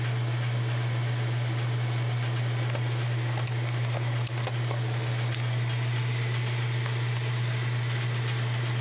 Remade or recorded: recorded